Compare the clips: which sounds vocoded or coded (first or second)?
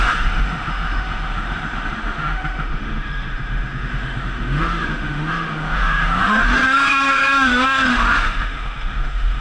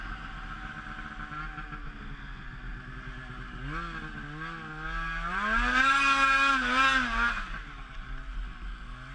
first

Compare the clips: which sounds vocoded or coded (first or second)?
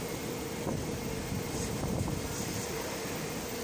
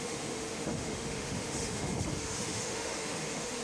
second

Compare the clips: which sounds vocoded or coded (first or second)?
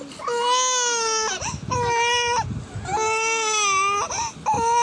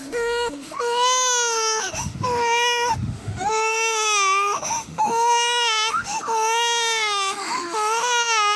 second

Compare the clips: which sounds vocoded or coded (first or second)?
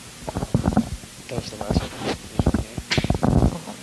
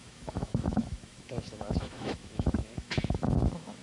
second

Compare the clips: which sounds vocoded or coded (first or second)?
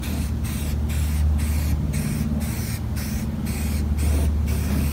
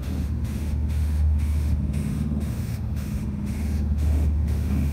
second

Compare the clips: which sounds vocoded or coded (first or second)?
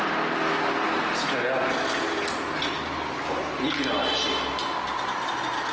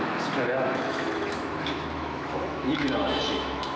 second